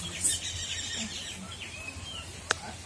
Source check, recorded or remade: recorded